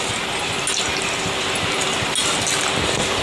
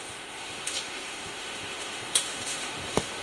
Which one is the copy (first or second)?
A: second